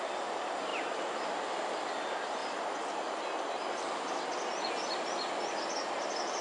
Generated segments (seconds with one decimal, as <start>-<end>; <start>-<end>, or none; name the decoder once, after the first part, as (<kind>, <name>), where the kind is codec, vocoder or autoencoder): none